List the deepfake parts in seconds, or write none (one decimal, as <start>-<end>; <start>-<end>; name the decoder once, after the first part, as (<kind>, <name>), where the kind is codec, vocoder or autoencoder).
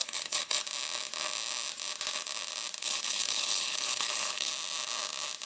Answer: 0.0-0.6 (codec, HILCodec); 2.8-4.5